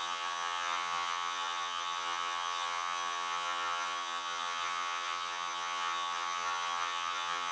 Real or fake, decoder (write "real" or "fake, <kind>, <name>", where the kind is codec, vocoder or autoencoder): fake, vocoder, HiFi-GAN